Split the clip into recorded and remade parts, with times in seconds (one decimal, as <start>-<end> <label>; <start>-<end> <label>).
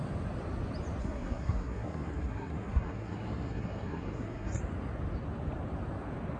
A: 0.0-1.0 recorded; 1.0-4.6 remade; 4.6-6.4 recorded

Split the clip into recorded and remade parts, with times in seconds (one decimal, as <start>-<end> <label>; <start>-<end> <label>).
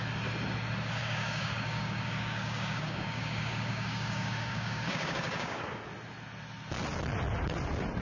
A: 0.0-1.0 recorded; 1.0-5.8 remade; 5.8-8.0 recorded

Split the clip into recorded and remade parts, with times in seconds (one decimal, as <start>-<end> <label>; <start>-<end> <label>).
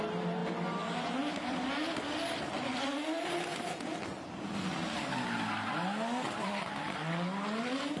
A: 0.0-8.0 recorded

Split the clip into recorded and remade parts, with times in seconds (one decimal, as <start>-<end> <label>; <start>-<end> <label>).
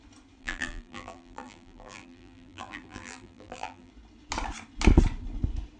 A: 0.0-0.4 recorded; 0.4-3.9 remade; 3.9-5.8 recorded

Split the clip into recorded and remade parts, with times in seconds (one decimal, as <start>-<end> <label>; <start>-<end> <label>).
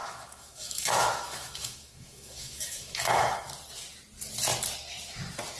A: 0.0-3.4 remade; 3.4-5.6 recorded